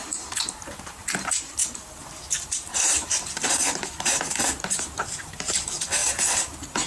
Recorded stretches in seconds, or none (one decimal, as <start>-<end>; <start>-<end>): 0.0-0.5